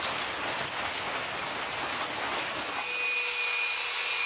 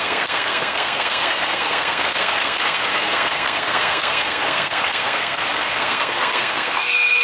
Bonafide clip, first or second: first